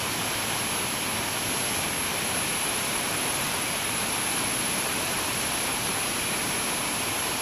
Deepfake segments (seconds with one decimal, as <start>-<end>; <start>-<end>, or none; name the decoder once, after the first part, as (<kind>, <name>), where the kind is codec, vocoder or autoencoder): 2.1-5.9 (vocoder, BigVGAN v2)